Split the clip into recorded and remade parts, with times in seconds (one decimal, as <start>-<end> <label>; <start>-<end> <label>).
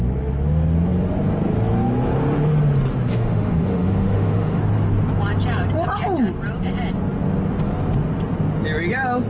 0.0-3.1 recorded; 3.1-4.6 remade; 4.6-9.3 recorded